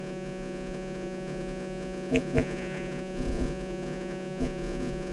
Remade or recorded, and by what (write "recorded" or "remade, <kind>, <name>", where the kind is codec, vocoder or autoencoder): remade, vocoder, Vocos